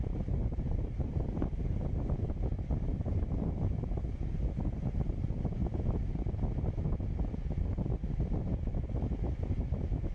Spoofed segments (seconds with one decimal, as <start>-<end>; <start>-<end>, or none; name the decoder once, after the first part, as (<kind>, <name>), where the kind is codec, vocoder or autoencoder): 0.4-1.7 (vocoder, BigVGAN v2); 2.9-3.6